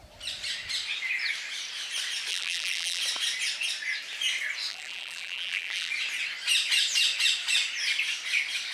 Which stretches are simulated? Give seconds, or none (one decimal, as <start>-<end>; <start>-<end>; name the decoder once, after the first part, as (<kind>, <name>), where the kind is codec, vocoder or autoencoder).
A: 2.3-3.0 (vocoder, BigVGAN v2); 4.7-5.9